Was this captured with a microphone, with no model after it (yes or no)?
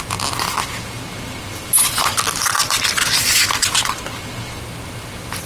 yes